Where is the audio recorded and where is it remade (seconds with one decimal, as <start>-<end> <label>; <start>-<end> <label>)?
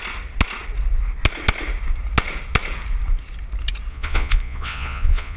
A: 0.0-3.9 recorded; 3.9-5.4 remade